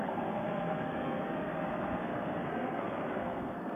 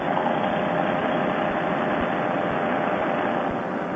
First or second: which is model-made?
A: first